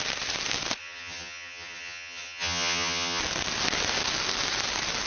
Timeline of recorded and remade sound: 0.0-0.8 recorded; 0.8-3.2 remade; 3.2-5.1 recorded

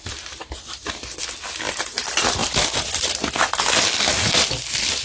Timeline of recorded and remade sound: 0.0-5.0 recorded

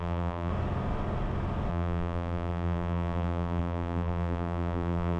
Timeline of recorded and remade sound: 0.0-0.5 remade; 0.5-1.7 recorded; 1.7-5.2 remade